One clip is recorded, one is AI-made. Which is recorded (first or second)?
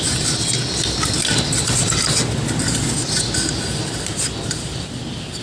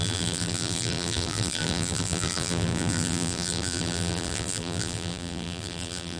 first